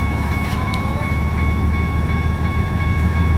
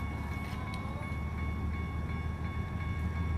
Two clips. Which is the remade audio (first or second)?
first